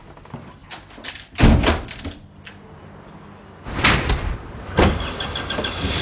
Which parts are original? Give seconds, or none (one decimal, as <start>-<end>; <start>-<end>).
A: 0.0-6.0